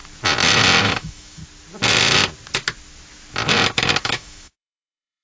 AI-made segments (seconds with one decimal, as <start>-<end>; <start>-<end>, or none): 0.8-1.4; 4.0-5.2